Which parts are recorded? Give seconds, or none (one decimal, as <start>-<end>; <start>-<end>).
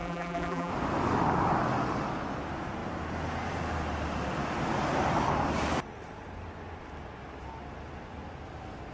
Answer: 0.7-8.9